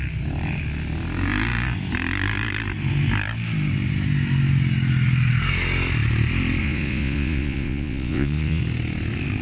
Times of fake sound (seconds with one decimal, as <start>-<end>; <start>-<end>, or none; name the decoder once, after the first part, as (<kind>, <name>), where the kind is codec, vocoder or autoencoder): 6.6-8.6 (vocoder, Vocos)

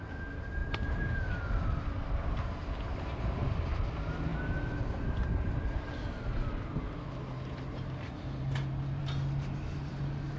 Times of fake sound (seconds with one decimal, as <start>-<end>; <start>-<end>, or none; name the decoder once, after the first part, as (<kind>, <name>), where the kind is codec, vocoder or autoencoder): 0.6-1.3 (vocoder, BigVGAN v2); 2.9-3.5

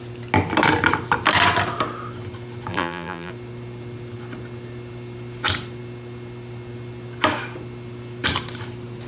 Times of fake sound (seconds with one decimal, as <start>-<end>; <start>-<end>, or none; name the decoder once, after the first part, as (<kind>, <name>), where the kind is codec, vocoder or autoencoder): 2.7-3.3 (vocoder, BigVGAN v2)